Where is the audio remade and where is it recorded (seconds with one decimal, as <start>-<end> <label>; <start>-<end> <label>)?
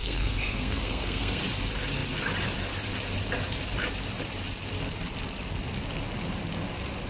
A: 0.0-1.4 remade; 1.4-7.1 recorded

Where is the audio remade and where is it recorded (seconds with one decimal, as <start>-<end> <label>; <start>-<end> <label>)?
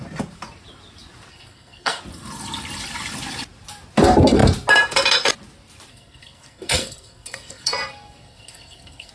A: 0.0-1.3 recorded; 1.3-2.0 remade; 2.0-5.9 recorded; 5.9-9.1 remade